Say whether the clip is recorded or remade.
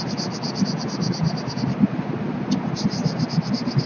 recorded